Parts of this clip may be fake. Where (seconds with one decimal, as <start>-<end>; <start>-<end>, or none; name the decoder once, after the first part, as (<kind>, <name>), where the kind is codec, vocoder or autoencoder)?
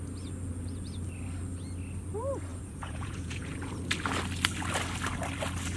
2.5-3.6 (vocoder, Vocos)